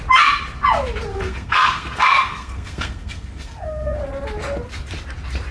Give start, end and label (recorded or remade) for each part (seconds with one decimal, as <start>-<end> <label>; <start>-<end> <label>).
0.0-1.1 recorded; 1.1-4.0 remade; 4.0-5.5 recorded